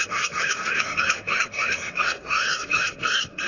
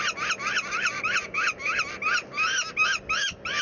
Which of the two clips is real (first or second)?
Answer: second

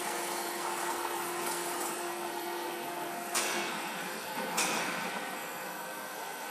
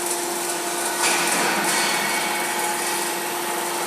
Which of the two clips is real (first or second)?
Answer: second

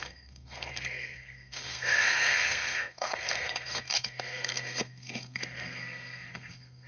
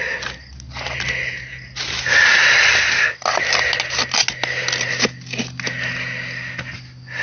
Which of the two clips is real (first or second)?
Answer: second